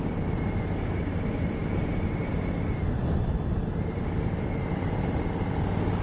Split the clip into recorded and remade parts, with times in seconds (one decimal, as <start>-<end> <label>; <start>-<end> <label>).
0.0-6.0 recorded